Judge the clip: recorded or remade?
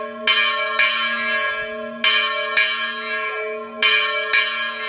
recorded